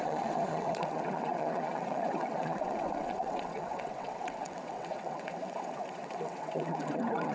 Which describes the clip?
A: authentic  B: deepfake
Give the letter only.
B